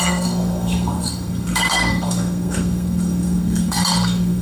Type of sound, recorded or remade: remade